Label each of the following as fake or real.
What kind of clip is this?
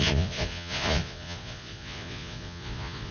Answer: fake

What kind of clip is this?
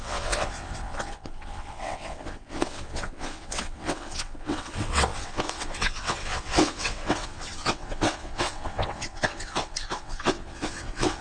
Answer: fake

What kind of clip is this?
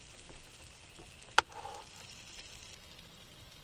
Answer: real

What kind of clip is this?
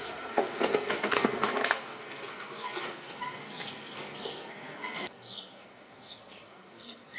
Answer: fake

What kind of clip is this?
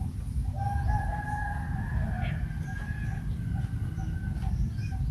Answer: real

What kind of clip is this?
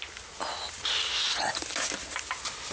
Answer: real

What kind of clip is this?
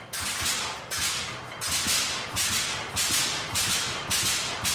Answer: real